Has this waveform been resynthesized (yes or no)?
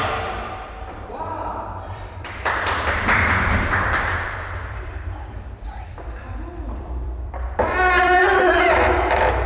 yes